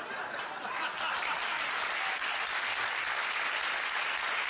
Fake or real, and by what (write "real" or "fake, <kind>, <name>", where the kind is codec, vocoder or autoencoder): real